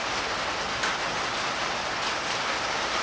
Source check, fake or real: real